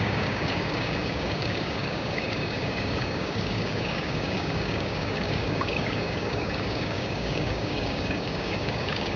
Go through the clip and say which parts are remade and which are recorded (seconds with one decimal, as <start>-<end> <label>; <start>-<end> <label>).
0.0-9.2 remade